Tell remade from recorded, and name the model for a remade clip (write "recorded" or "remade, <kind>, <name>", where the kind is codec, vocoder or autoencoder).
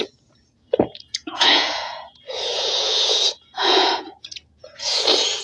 remade, vocoder, Vocos